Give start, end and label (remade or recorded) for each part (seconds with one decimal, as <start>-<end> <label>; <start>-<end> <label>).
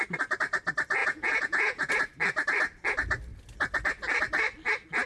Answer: 0.0-1.0 recorded; 1.0-1.9 remade; 1.9-5.1 recorded